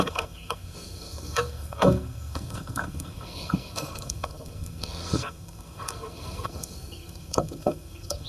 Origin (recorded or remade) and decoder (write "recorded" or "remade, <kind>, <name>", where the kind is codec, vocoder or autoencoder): remade, codec, SNAC